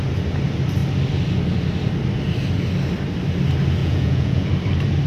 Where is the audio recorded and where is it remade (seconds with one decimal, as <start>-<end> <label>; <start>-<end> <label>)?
0.0-3.8 recorded; 3.8-4.5 remade; 4.5-5.1 recorded